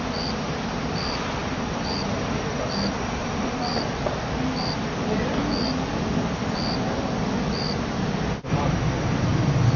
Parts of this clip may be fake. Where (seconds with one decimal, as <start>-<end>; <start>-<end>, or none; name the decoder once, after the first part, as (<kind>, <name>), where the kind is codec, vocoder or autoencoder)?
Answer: none